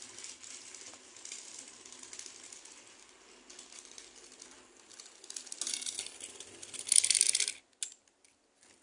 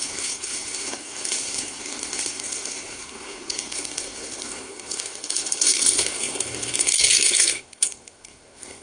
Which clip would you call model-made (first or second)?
second